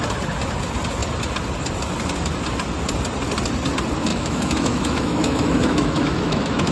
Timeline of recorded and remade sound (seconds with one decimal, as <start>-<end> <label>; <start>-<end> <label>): 0.0-4.1 recorded; 4.1-6.7 remade